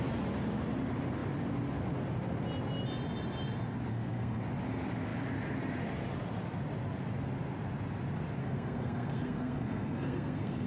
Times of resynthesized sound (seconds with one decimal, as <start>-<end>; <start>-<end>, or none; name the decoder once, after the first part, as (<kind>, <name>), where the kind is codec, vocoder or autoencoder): 3.9-4.4 (codec, SNAC); 8.4-10.7

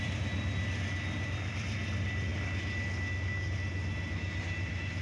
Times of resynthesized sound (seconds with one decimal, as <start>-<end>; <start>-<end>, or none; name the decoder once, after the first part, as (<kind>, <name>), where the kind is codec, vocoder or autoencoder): none

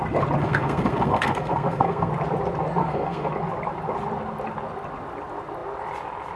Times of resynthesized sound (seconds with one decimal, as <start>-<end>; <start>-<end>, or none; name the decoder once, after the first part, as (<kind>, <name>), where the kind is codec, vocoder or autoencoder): 0.4-2.1 (codec, SNAC); 2.8-3.3

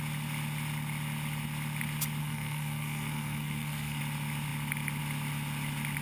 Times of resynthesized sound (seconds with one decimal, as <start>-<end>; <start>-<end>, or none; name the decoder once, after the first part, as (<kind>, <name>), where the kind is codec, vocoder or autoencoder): 2.2-4.0 (codec, SNAC)

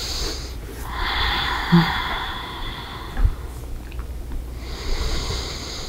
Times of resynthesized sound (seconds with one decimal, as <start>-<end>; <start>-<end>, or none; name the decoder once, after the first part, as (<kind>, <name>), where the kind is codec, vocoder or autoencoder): 0.0-2.9 (vocoder, BigVGAN v2)

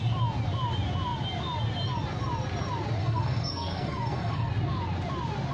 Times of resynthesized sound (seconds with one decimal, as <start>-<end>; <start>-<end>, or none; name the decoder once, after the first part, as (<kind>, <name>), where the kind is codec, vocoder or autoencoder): 3.0-4.5 (codec, SNAC)

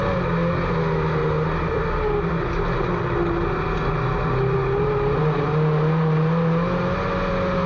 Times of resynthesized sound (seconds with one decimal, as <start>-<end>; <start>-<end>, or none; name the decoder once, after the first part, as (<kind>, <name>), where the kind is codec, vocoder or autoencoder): none

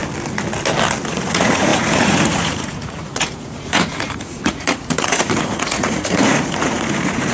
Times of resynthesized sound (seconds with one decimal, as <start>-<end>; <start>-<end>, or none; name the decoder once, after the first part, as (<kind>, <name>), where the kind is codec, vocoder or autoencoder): 1.1-7.3 (vocoder, Vocos)